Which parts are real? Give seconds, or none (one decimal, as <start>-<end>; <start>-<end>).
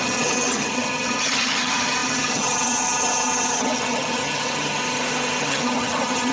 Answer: 4.8-5.4